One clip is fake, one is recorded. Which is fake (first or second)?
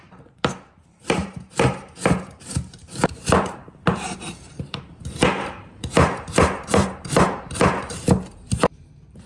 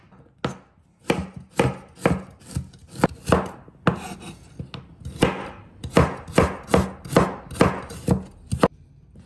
first